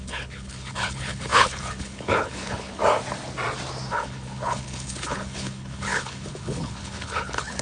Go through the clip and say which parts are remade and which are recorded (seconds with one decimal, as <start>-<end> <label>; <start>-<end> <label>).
0.0-2.8 remade; 2.8-3.9 recorded; 3.9-7.6 remade